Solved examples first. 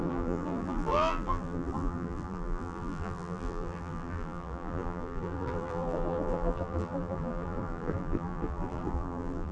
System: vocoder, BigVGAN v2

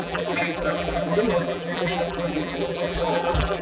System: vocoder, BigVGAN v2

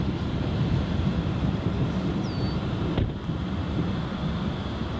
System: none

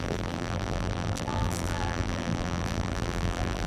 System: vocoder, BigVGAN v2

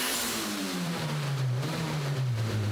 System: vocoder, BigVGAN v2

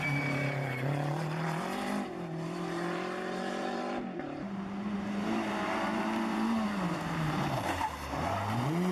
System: vocoder, BigVGAN v2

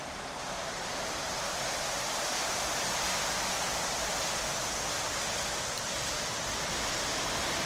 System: none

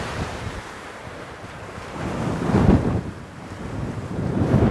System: vocoder, BigVGAN v2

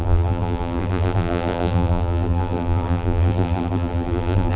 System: vocoder, BigVGAN v2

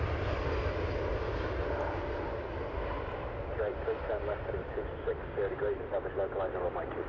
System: none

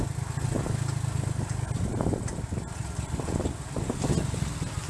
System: none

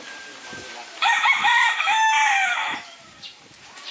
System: vocoder, BigVGAN v2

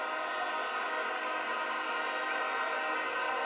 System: none